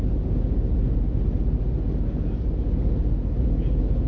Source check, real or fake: real